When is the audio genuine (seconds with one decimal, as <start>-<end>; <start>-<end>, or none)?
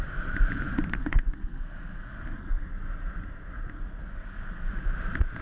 0.0-1.0; 2.7-4.1; 4.7-5.4